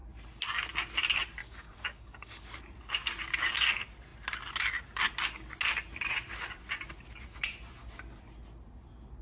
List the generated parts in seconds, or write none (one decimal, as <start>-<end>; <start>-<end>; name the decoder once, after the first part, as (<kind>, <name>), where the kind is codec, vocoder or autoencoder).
1.4-2.6 (codec, DAC)